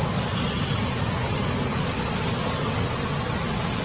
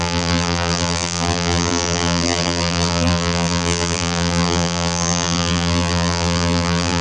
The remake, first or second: second